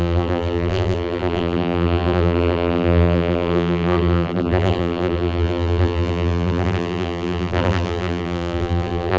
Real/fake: fake